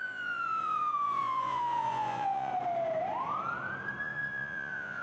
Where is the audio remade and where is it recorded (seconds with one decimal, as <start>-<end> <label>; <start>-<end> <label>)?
0.0-2.5 remade; 2.5-4.0 recorded; 4.0-5.0 remade